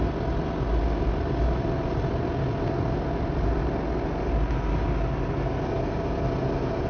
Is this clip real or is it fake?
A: real